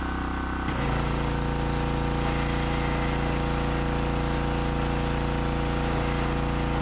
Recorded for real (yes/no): yes